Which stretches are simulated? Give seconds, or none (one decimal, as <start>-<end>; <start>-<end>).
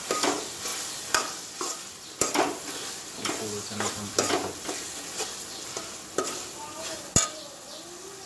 none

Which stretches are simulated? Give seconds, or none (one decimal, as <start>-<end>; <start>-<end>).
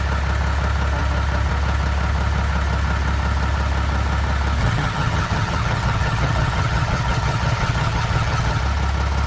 4.6-8.6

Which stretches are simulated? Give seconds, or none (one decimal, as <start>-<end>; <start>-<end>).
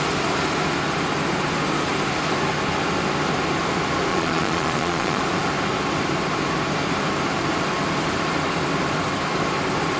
4.1-5.2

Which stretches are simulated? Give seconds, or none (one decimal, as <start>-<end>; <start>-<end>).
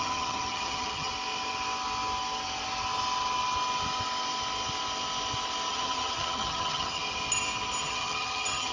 0.0-1.1; 5.7-7.0; 7.8-8.7